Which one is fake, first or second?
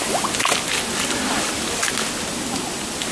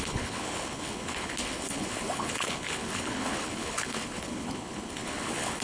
second